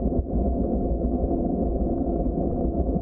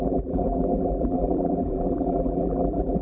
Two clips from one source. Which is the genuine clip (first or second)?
first